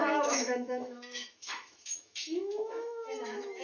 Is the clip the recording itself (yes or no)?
no